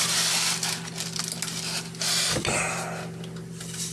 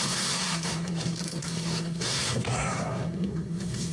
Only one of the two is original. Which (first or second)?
first